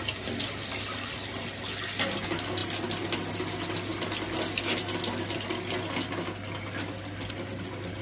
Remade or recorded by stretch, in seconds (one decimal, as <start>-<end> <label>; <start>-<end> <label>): 0.0-8.0 recorded